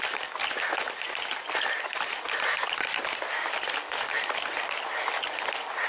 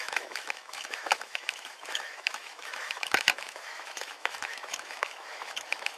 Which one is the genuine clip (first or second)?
first